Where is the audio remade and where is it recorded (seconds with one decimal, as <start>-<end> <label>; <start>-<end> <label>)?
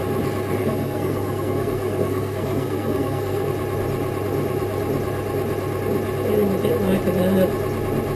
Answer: 0.0-0.6 recorded; 0.6-3.5 remade; 3.5-8.1 recorded